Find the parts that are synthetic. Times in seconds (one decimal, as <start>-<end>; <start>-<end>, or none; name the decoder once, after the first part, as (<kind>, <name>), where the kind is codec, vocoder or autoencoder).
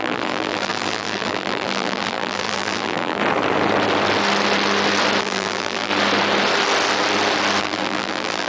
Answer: 0.0-3.2 (vocoder, BigVGAN v2); 5.2-5.9; 7.6-8.5